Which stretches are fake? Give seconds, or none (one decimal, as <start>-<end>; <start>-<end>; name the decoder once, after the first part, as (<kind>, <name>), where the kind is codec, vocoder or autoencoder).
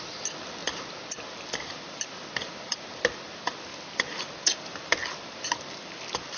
none